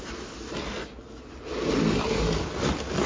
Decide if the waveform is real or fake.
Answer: real